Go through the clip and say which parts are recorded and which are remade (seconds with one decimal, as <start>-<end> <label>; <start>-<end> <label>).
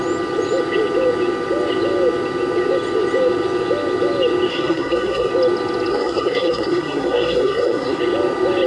0.0-4.5 recorded; 4.5-5.3 remade; 5.3-5.9 recorded; 5.9-8.0 remade; 8.0-8.7 recorded